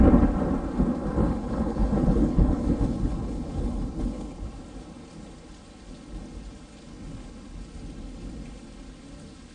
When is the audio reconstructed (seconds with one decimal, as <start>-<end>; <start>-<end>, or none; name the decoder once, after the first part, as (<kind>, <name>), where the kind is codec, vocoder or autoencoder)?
1.2-4.6 (codec, HILCodec); 6.9-7.6